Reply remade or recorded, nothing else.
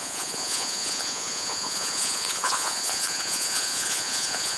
remade